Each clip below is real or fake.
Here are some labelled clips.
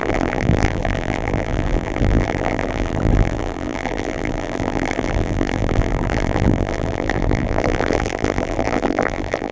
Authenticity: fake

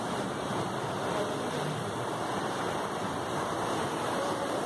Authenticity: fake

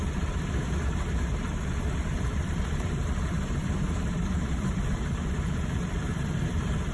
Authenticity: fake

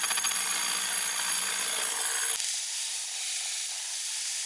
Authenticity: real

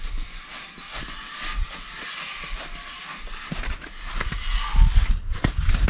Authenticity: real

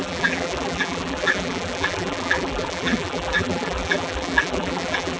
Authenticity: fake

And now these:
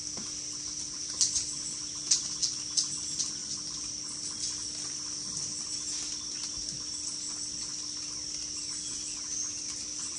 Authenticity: real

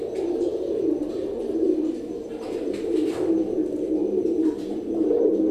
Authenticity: real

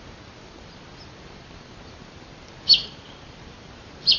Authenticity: fake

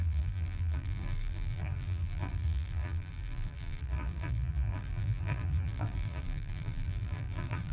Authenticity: fake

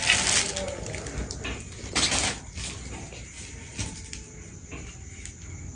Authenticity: real